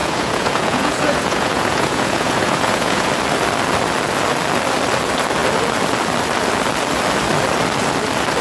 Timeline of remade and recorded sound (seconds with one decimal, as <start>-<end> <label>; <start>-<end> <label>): 0.0-3.1 remade; 3.1-8.4 recorded